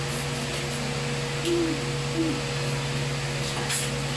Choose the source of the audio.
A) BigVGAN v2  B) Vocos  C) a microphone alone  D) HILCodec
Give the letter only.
C